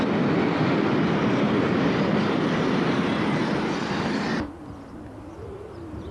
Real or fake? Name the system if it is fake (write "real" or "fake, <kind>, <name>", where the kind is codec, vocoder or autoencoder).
real